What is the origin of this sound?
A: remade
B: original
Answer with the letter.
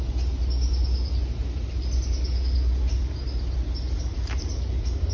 B